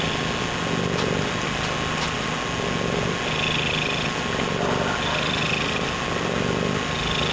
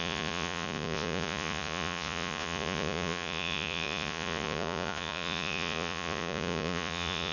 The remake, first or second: second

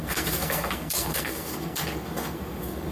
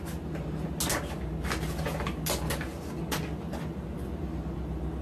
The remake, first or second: first